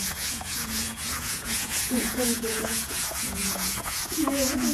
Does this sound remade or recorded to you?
remade